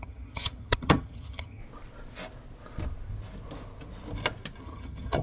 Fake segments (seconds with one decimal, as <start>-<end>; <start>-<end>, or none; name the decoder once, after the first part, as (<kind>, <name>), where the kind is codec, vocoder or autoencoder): 0.0-1.6 (vocoder, HiFi-GAN); 4.6-5.2